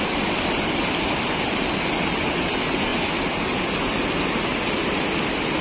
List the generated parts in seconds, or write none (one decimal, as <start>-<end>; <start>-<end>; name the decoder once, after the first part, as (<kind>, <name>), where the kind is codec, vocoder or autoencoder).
none